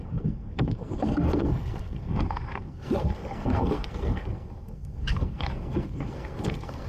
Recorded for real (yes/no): no